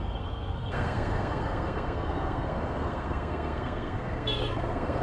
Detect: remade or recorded remade